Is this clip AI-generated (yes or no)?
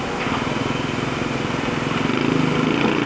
no